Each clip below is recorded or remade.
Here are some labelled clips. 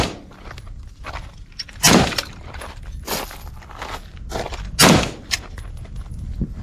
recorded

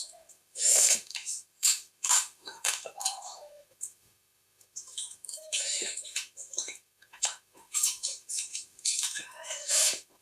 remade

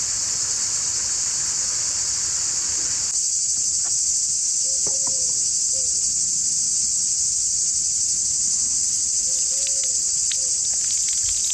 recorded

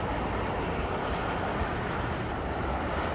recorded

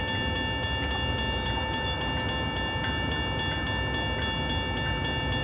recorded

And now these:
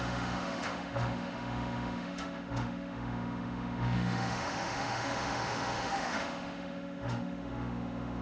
remade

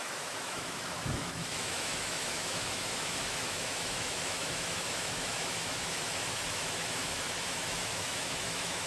remade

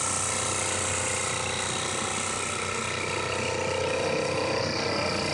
recorded